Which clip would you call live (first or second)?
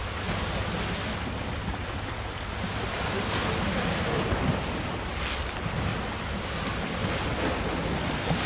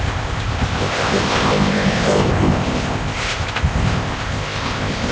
first